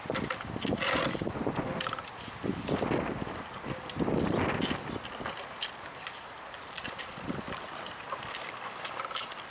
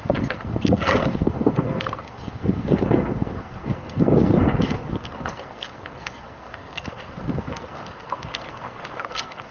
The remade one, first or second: second